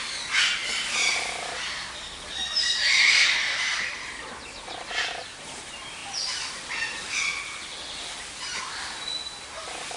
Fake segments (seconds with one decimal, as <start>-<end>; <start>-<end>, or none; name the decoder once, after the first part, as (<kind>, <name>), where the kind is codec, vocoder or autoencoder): none